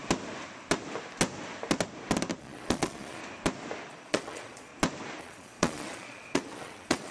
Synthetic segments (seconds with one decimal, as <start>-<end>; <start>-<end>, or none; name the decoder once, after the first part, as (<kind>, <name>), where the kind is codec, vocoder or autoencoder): 2.4-3.2 (vocoder, Vocos); 3.9-4.7; 5.2-7.1